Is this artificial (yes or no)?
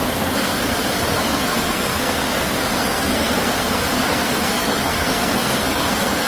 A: yes